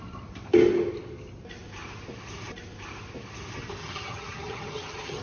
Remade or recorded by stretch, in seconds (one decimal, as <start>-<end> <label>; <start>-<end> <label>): 0.0-3.8 recorded; 3.8-5.2 remade